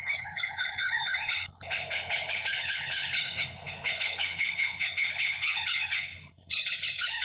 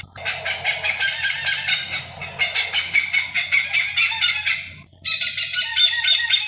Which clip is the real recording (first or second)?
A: second